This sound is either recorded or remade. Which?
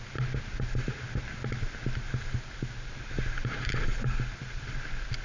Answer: recorded